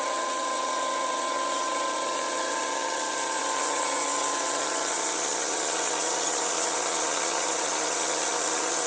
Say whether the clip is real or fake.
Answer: fake